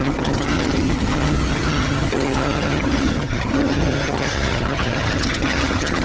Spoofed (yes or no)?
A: yes